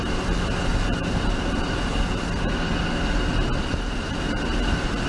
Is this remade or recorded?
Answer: recorded